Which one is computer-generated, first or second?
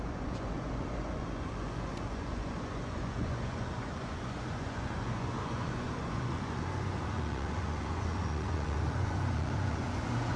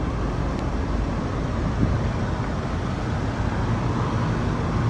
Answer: first